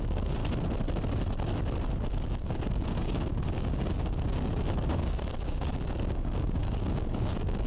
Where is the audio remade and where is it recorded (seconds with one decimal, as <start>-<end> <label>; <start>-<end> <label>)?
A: 0.0-0.4 remade; 0.4-2.1 recorded; 2.1-7.7 remade